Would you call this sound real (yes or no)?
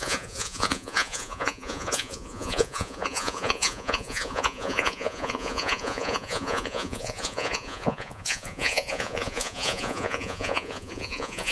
no